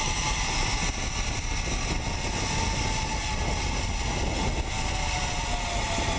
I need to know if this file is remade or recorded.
recorded